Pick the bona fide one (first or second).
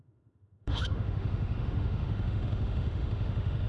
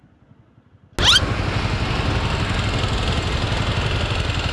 second